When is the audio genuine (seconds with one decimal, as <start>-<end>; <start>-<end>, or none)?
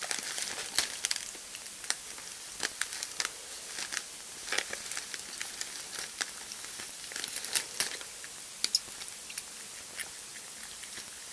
0.0-11.3